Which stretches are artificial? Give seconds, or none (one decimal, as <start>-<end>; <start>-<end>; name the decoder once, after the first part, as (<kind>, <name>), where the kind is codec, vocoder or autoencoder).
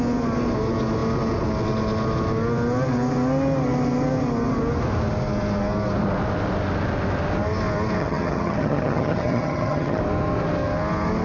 8.0-10.0 (vocoder, HiFi-GAN)